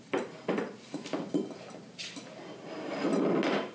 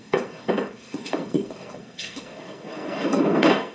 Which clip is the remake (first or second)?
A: second